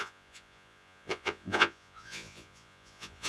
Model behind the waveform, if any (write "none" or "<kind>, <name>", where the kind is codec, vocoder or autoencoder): vocoder, Vocos